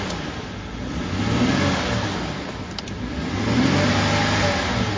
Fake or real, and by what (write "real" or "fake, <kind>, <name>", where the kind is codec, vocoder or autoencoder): real